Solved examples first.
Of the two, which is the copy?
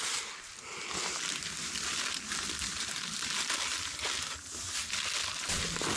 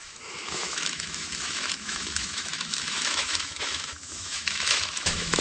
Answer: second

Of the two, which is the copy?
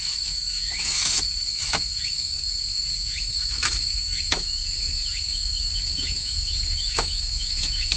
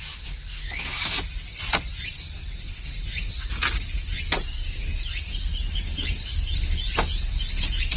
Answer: first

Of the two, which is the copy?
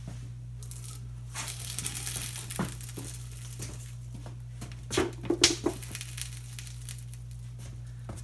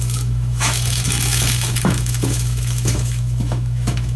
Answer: second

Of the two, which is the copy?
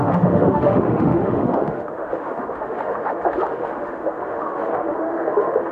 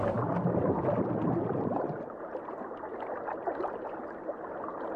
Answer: first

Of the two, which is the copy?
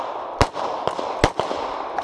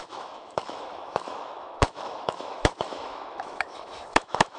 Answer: second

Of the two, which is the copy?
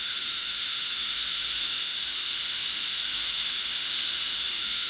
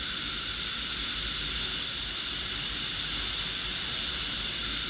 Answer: first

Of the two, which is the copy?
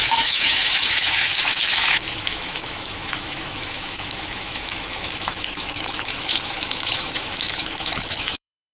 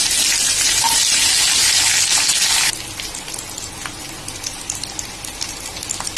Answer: first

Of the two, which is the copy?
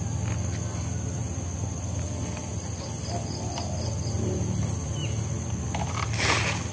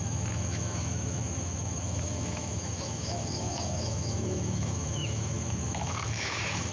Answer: second